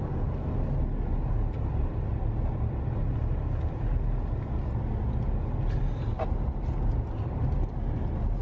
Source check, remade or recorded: recorded